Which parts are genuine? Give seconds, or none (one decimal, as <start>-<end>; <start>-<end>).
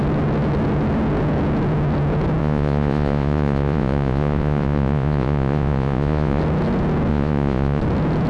0.0-2.4; 6.4-7.1; 7.8-8.3